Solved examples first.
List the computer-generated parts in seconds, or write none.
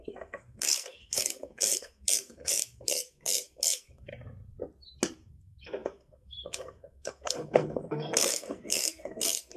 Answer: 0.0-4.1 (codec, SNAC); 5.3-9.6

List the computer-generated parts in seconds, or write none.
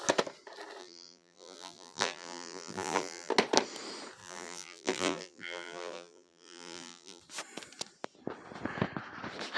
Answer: 0.8-3.3 (vocoder, BigVGAN v2); 4.2-7.2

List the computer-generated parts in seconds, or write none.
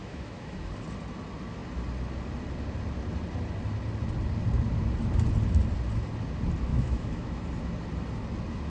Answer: 0.0-0.7 (autoencoder, DAC-VAE); 6.7-7.4